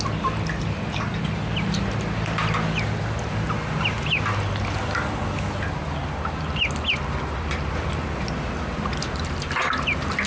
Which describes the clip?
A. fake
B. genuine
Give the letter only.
B